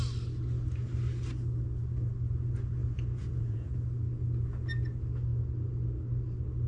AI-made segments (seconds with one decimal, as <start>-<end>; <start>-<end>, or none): 2.8-3.7